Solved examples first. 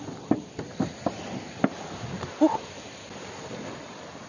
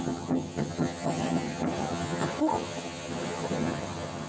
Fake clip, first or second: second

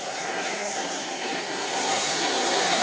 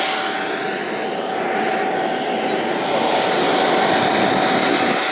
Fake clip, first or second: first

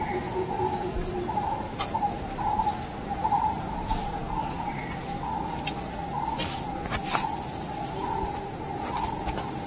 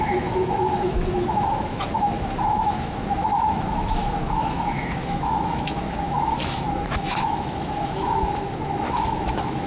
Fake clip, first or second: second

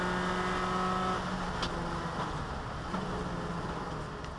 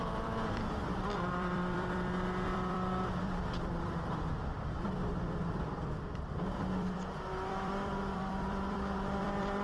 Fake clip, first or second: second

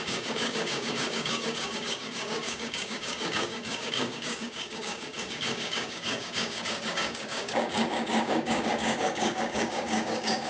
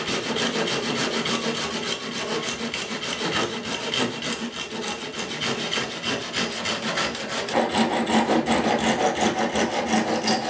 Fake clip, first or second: first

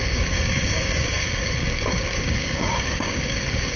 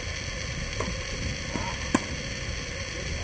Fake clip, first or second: first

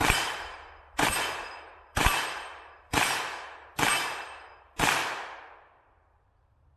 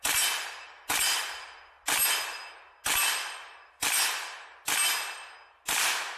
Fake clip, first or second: first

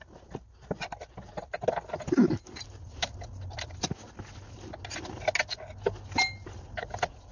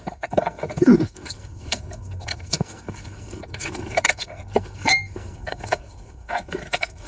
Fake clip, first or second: second